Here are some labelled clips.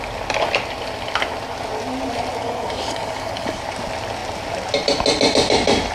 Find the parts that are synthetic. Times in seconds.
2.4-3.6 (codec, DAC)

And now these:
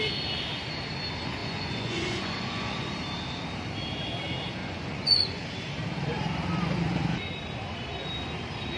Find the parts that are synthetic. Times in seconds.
1.4-2.9 (vocoder, Vocos); 4.6-5.4

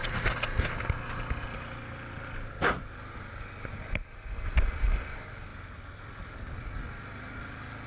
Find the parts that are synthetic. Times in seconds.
none